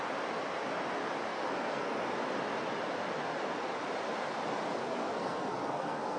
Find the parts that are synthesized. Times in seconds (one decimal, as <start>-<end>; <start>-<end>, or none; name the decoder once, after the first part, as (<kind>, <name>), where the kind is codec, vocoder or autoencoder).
1.3-2.1 (codec, SNAC); 4.8-6.2